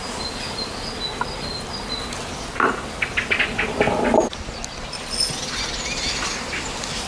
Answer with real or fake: real